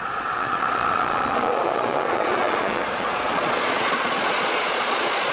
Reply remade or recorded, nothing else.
remade